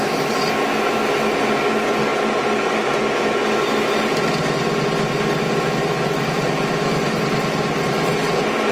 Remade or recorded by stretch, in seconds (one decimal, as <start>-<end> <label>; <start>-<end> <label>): 0.0-8.7 recorded